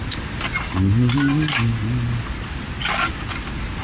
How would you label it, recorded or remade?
recorded